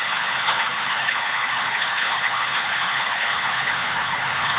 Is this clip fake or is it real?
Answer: fake